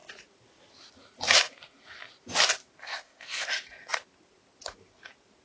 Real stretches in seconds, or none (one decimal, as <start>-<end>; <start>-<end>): 0.0-2.8; 3.5-5.4